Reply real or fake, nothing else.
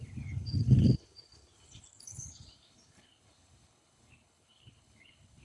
fake